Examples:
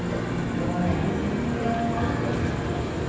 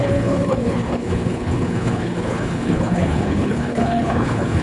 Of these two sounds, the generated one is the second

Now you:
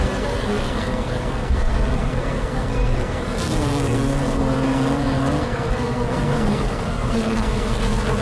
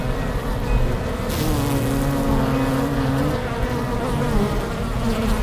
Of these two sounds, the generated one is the first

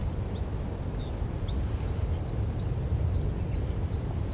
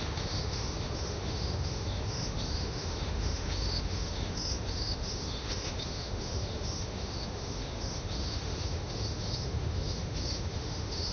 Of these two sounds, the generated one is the second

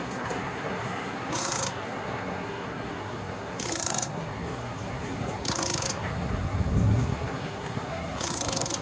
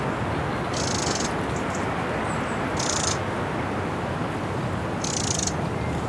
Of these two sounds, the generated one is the first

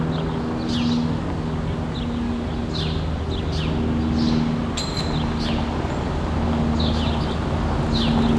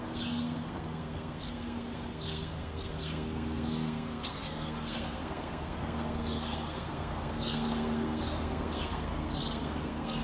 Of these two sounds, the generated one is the second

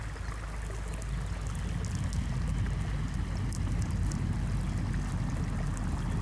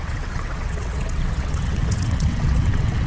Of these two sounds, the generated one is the second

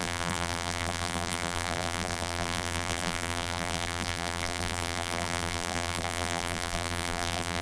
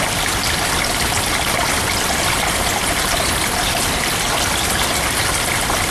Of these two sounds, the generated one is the first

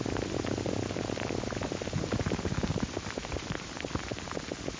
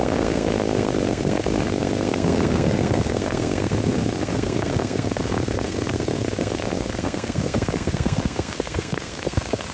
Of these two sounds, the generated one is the second